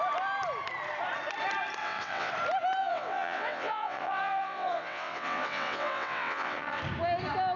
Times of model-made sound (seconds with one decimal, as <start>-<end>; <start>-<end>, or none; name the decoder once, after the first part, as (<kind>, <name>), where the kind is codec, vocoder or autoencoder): 1.8-2.3 (vocoder, WaveNeXt); 2.8-6.8